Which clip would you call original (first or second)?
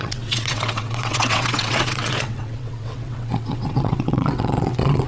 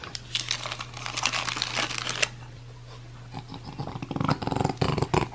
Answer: second